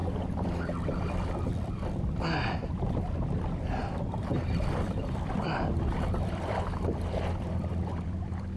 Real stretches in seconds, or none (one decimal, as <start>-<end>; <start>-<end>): 1.5-4.3